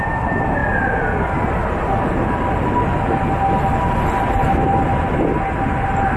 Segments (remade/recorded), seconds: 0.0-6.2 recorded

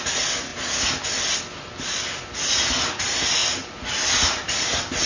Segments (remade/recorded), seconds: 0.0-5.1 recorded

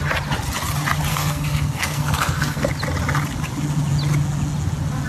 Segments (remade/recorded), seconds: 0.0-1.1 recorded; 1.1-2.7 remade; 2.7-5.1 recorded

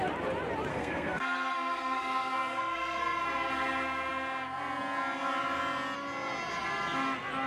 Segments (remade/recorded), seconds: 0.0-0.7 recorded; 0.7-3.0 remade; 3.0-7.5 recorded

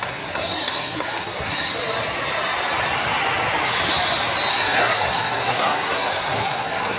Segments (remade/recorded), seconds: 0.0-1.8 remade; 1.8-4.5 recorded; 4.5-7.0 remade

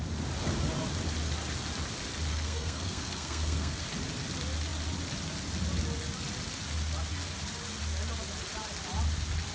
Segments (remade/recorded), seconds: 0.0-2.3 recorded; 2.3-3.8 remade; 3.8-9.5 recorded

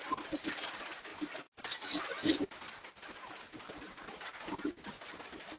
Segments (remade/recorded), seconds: 0.0-5.6 recorded

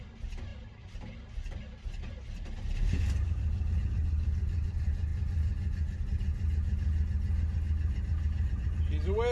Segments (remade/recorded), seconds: 0.0-9.3 recorded